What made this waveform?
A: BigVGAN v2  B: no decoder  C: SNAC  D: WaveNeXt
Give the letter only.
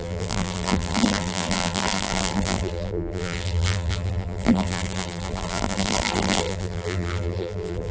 A